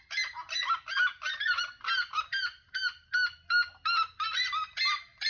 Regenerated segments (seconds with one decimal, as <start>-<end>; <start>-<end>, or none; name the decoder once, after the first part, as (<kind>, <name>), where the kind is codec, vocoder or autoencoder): none

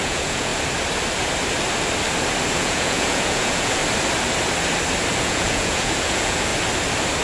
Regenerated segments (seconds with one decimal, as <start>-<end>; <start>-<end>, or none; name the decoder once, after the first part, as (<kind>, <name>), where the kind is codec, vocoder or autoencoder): 0.0-0.5 (vocoder, Vocos); 2.5-3.8; 5.2-6.5

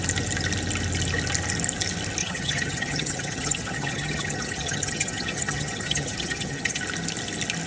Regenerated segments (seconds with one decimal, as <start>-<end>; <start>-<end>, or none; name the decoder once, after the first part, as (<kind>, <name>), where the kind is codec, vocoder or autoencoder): 2.2-6.8 (vocoder, HiFi-GAN)

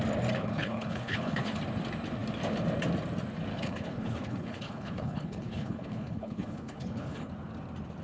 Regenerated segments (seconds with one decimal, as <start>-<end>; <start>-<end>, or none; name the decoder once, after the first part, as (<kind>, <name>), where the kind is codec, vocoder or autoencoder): 0.4-1.6 (codec, HILCodec); 3.5-7.3

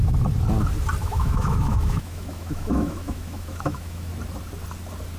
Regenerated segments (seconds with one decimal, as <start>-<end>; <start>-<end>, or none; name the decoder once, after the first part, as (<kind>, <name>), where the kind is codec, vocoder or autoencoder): 1.0-4.1 (autoencoder, DAC-VAE)

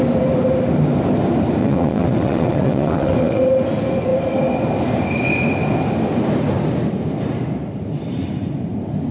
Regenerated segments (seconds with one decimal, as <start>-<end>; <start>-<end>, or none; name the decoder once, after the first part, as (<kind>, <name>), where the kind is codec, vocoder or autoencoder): 1.6-3.5 (vocoder, WaveNeXt)

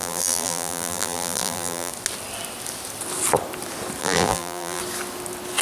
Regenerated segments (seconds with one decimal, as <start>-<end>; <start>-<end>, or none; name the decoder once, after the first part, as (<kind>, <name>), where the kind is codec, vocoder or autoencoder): 0.0-1.9 (vocoder, BigVGAN v2); 4.0-4.8